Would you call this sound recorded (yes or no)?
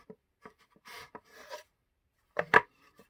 no